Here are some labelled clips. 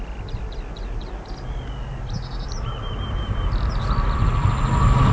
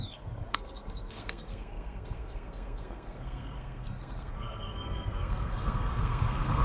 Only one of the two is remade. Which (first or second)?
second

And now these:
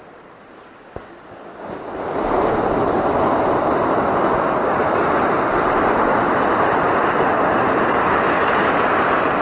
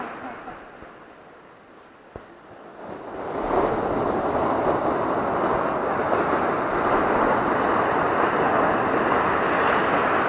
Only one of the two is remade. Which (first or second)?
first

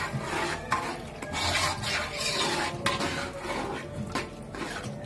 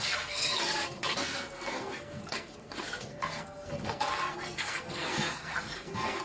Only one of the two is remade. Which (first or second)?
second